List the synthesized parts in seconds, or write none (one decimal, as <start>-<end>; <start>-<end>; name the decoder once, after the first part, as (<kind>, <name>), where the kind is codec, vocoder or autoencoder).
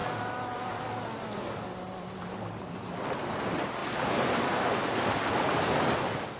none